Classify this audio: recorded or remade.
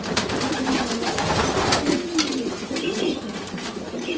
recorded